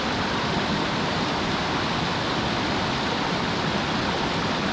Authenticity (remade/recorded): recorded